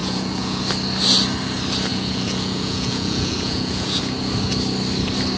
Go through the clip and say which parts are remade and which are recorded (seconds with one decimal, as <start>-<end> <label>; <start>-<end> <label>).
0.0-0.6 remade; 0.6-1.9 recorded; 1.9-4.0 remade; 4.0-5.4 recorded